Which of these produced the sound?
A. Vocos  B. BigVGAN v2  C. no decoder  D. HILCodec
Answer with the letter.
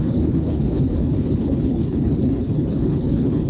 D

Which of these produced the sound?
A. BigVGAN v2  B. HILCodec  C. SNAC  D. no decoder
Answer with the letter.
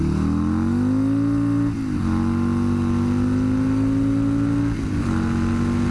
D